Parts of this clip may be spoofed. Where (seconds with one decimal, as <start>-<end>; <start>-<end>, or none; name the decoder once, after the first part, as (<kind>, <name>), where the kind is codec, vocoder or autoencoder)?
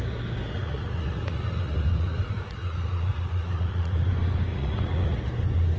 0.6-4.1 (vocoder, Vocos); 4.5-5.2